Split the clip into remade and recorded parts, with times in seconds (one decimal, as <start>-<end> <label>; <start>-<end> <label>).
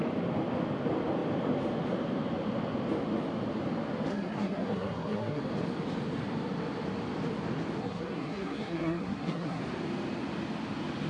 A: 0.0-4.1 recorded; 4.1-5.4 remade; 5.4-7.8 recorded; 7.8-9.6 remade; 9.6-11.1 recorded